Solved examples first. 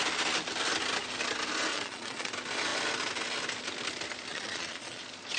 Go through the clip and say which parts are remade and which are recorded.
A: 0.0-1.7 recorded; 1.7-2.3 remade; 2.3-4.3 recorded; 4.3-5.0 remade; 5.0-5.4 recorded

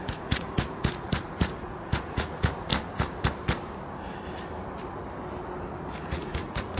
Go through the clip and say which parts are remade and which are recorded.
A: 0.0-2.7 remade; 2.7-6.1 recorded; 6.1-6.8 remade

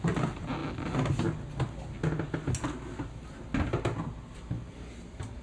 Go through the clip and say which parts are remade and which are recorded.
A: 0.0-5.4 recorded

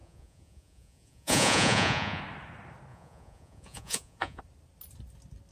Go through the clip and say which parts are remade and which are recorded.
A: 0.0-2.2 remade; 2.2-2.9 recorded; 2.9-4.4 remade; 4.4-5.5 recorded

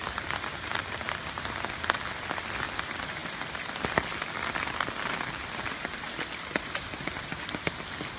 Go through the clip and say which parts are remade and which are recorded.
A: 0.0-8.2 recorded